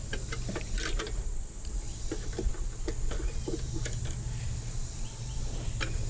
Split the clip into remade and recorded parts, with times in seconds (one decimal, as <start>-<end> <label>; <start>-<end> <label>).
0.0-6.1 recorded